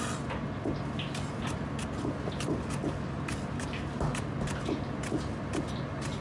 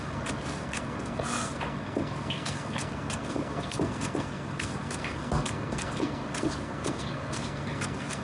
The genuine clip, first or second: first